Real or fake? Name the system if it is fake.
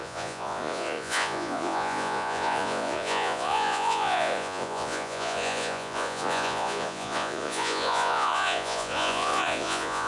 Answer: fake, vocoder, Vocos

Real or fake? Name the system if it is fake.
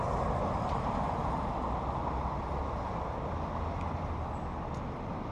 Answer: real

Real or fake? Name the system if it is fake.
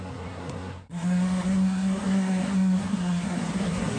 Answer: fake, codec, SNAC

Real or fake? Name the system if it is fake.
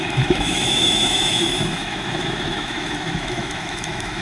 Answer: fake, autoencoder, DAC-VAE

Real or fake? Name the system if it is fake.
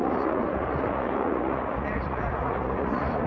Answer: fake, vocoder, Vocos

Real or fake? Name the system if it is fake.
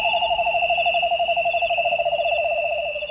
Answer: real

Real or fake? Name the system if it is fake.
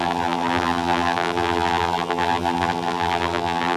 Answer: fake, vocoder, BigVGAN v2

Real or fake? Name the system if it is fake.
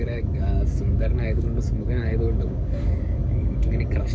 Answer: fake, codec, DAC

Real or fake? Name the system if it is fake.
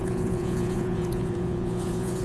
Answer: fake, vocoder, Vocos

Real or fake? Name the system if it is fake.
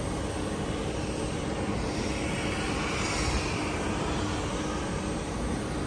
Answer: real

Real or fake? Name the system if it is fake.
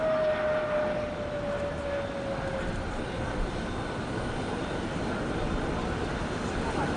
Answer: real